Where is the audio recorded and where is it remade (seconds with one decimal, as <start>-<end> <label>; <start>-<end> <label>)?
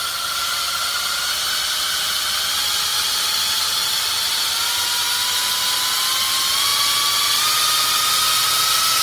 0.0-2.9 recorded; 2.9-3.4 remade; 3.4-9.0 recorded